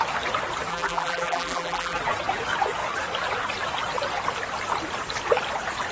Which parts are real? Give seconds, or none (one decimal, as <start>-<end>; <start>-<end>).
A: 0.0-0.7; 2.0-5.9

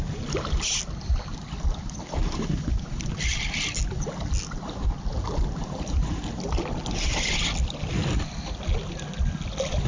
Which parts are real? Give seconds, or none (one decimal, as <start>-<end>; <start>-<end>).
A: 0.0-2.2; 3.1-5.6; 6.2-9.9

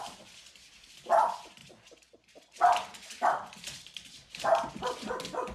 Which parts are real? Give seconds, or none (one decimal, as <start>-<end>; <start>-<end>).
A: 0.0-5.5

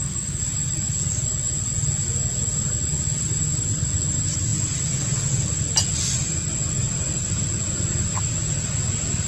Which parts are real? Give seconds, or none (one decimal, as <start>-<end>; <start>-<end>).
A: 0.0-9.3

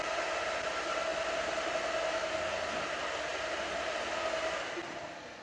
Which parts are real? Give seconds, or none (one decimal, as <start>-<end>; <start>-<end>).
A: 0.0-1.1; 1.7-3.3; 4.1-5.4

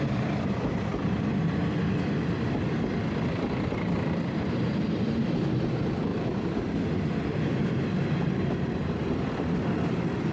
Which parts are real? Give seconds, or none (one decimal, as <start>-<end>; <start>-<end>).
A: 0.9-1.6